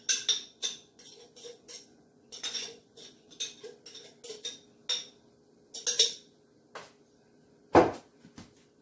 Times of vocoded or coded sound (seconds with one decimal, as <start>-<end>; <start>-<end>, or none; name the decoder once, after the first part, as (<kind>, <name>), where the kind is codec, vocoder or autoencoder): 0.4-3.4 (vocoder, Vocos)

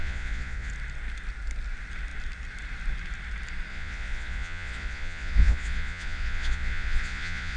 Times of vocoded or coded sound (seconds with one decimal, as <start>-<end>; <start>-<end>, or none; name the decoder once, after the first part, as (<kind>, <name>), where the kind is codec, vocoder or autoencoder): 0.0-0.7 (vocoder, Vocos); 3.7-7.6

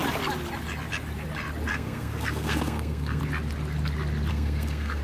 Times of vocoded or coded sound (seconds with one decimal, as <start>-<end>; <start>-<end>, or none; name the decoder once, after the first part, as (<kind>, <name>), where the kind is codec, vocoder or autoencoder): 1.7-3.2 (codec, SNAC); 4.3-5.0